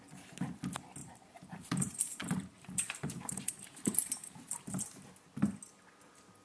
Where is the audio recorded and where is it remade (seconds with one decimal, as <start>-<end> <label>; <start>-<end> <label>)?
0.0-1.0 recorded; 1.0-4.8 remade; 4.8-6.4 recorded